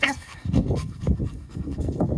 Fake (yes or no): yes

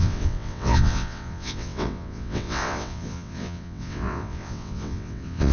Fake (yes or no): yes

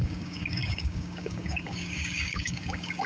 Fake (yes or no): yes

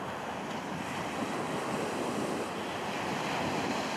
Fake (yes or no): no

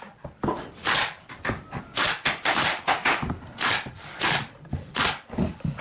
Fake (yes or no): no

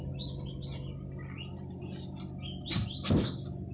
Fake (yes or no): no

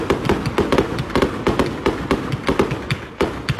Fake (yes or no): no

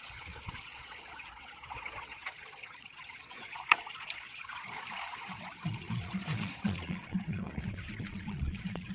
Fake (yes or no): yes